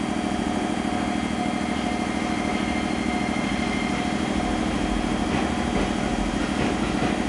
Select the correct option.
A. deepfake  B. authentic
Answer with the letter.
B